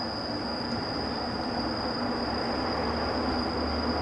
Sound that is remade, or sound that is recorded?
recorded